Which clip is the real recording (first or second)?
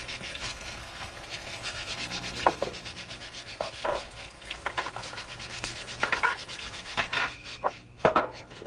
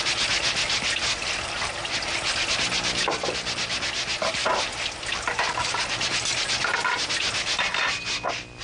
second